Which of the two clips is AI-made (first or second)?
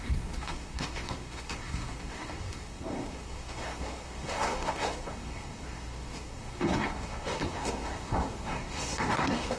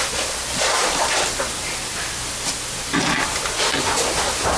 first